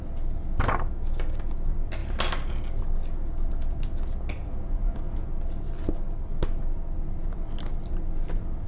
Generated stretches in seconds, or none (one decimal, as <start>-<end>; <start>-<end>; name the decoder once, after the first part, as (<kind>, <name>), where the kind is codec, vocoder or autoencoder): 4.4-5.3 (vocoder, Vocos)